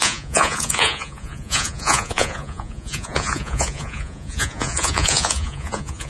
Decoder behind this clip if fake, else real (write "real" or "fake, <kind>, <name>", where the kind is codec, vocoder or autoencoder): fake, vocoder, Vocos